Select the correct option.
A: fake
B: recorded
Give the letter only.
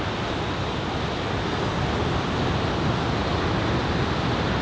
B